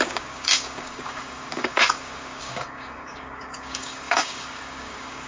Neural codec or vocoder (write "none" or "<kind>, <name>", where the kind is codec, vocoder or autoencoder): codec, DAC